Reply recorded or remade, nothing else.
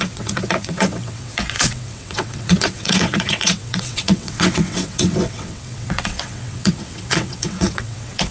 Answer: remade